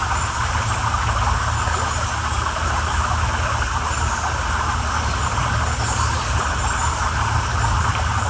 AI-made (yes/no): no